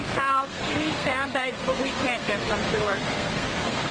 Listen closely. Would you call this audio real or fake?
fake